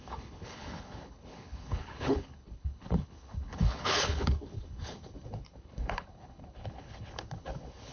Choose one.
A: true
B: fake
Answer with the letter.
B